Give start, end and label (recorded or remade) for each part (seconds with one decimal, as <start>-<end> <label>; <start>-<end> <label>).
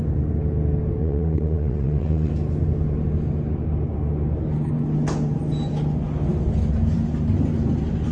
0.0-1.0 recorded; 1.0-2.3 remade; 2.3-8.1 recorded